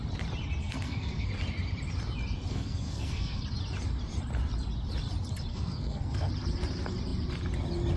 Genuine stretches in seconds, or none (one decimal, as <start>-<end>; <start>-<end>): 0.0-0.6; 1.3-2.5; 3.4-5.5; 6.3-8.0